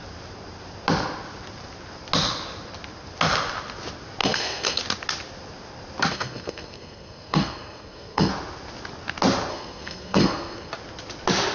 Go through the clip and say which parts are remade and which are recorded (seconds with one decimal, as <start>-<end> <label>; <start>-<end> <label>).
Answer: 0.0-4.2 recorded; 4.2-4.8 remade; 4.8-6.1 recorded; 6.1-8.3 remade; 8.3-9.5 recorded; 9.5-10.7 remade; 10.7-11.5 recorded